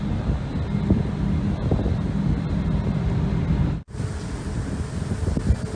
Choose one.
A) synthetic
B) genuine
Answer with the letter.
B